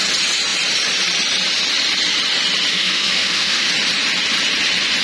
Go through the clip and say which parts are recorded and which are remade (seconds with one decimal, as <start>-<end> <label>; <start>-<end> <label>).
0.0-2.7 recorded; 2.7-3.7 remade; 3.7-5.0 recorded